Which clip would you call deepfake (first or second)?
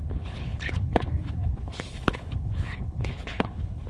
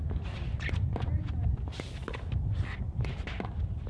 first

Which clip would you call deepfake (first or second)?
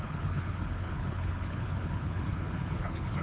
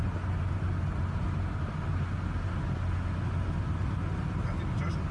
first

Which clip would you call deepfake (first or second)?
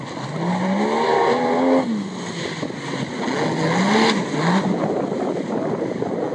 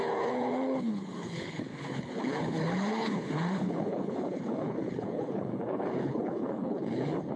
second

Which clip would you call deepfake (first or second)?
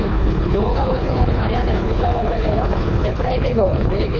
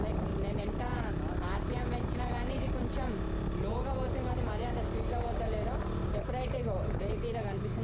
first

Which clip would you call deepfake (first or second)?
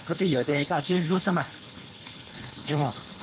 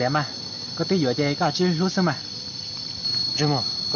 first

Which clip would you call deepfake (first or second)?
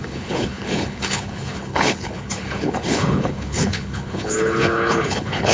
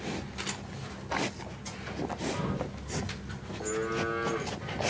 first